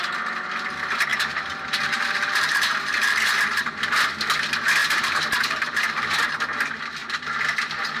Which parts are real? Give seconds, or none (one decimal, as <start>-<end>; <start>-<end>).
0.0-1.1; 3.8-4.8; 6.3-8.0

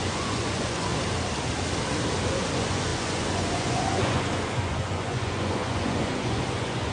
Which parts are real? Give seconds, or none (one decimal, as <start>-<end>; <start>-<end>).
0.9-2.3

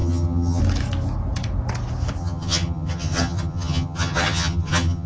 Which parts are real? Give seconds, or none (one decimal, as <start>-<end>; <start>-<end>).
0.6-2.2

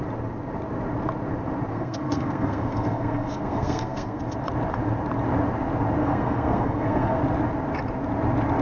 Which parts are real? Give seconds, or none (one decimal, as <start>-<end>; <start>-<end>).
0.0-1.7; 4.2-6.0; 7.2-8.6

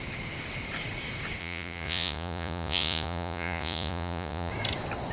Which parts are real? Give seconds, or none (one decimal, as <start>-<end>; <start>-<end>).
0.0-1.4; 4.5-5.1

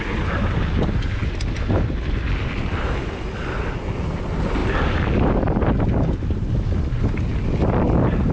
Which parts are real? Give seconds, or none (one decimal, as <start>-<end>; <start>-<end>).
0.0-8.3

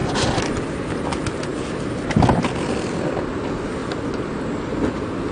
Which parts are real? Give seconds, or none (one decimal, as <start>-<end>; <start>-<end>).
0.0-5.3

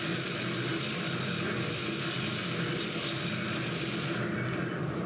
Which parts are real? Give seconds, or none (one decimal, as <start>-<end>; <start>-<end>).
0.0-5.1